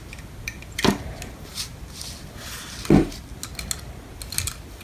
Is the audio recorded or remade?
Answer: recorded